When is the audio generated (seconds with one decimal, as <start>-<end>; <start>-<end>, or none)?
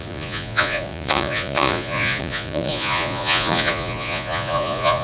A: 0.0-5.0